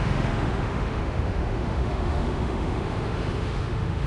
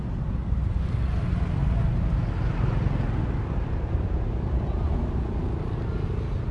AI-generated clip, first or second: first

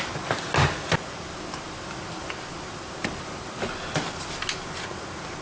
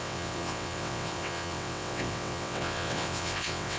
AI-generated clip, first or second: second